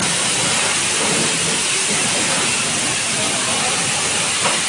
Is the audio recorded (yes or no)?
yes